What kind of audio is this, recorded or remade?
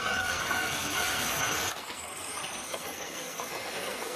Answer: remade